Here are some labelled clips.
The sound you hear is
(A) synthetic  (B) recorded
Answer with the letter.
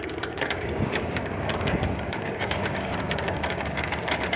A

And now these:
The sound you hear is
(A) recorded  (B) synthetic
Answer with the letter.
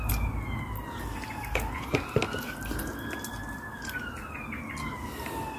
A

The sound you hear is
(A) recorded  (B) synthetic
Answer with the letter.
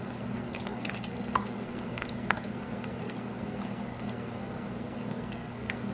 B